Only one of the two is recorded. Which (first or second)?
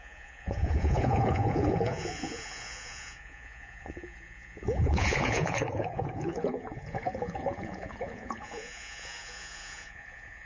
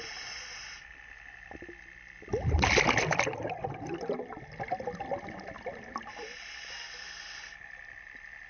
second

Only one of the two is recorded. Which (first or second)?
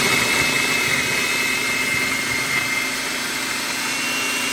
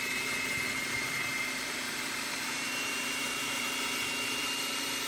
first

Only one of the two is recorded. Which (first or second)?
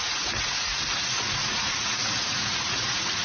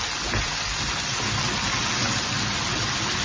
second